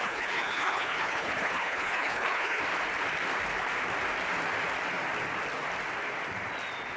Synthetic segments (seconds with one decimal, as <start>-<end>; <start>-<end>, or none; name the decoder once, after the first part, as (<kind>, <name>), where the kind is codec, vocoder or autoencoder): 0.0-2.6 (codec, HILCodec)